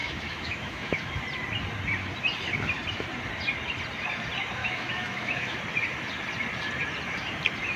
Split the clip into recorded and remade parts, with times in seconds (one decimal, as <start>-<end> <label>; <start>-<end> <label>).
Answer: 0.0-1.1 remade; 1.1-4.6 recorded; 4.6-5.6 remade; 5.6-7.8 recorded